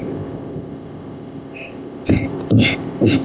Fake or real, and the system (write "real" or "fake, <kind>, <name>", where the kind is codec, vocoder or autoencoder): fake, codec, ZipCodec